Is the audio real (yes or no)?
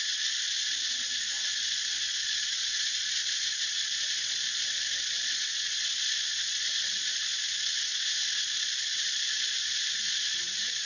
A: no